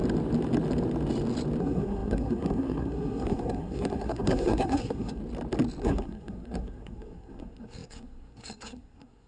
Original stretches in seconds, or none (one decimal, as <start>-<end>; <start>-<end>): 0.0-1.6; 5.2-5.8